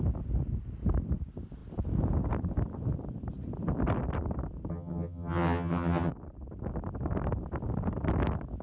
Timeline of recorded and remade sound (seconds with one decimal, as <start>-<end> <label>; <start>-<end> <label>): 0.0-4.7 recorded; 4.7-6.1 remade; 6.1-8.6 recorded